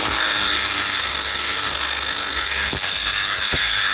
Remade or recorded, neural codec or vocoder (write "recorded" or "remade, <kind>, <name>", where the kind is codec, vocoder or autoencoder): remade, codec, SNAC